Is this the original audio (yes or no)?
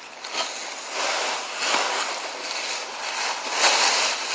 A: yes